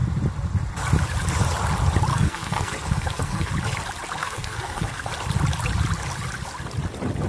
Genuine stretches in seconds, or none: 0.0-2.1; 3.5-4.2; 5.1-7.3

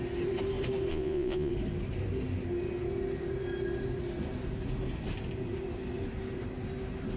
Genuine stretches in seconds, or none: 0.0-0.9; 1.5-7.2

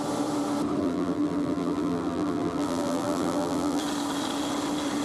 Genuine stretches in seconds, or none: 0.0-0.8; 3.8-5.0

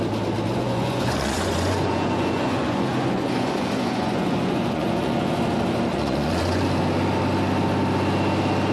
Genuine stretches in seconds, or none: 0.0-0.5; 5.4-5.9; 6.6-8.7

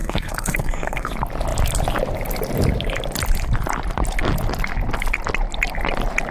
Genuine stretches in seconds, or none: 1.1-6.3